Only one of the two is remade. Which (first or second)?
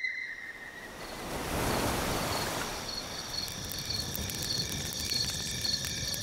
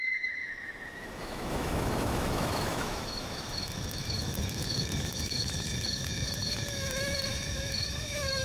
second